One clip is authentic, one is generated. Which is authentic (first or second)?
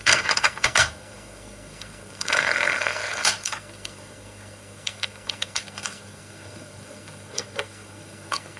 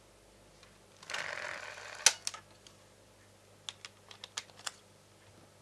second